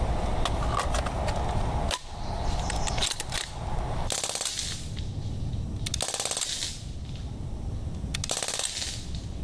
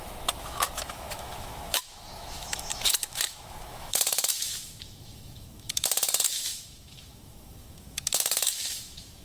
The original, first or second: first